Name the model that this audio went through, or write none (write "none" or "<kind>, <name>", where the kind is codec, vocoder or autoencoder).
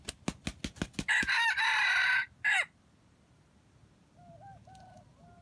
none